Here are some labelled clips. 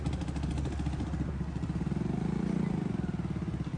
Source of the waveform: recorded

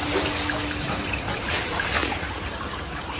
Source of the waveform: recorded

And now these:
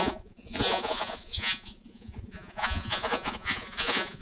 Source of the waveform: remade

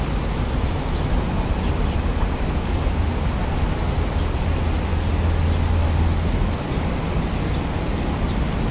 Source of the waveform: recorded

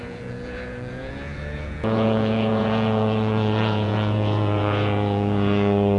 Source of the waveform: remade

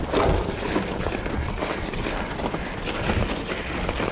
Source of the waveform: recorded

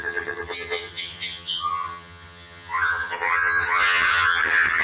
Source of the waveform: remade